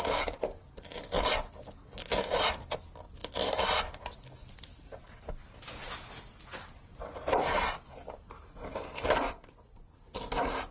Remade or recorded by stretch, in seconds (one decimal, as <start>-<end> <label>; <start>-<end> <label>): 0.0-10.7 recorded